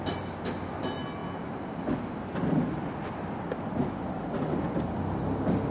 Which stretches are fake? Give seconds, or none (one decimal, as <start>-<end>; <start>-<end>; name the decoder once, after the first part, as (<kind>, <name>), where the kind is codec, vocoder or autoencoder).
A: none